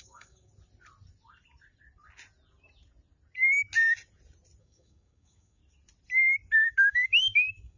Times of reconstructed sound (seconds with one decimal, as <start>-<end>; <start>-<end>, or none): 0.0-0.5; 4.6-5.6; 6.6-7.8